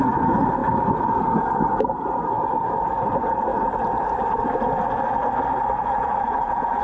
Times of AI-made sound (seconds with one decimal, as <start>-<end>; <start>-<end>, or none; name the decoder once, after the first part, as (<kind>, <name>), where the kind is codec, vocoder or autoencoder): 5.8-6.8 (vocoder, Vocos)